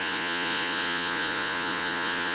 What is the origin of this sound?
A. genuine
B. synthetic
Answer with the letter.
B